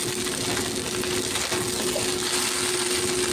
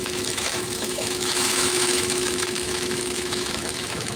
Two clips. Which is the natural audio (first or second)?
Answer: first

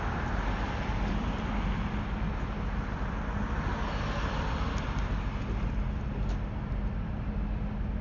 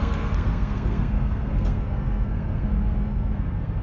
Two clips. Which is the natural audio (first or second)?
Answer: first